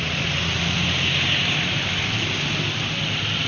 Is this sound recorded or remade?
recorded